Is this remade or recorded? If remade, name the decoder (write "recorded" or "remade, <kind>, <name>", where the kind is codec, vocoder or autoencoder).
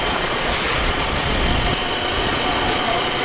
remade, vocoder, Vocos